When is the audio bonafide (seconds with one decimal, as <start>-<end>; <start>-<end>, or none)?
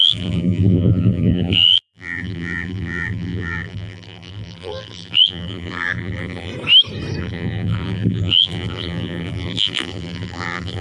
6.5-7.2